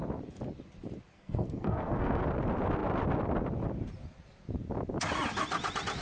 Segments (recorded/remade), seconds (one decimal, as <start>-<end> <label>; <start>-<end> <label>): 0.0-1.1 recorded; 1.1-2.2 remade; 2.2-6.0 recorded